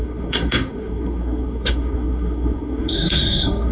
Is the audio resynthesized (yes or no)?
yes